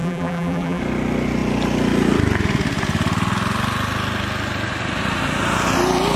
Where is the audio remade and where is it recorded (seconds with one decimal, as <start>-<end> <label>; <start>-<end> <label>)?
0.0-0.8 remade; 0.8-6.2 recorded